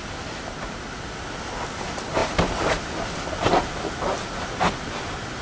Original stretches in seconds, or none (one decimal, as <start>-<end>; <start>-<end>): 0.0-5.4